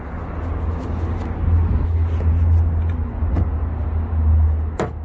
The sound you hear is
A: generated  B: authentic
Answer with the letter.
B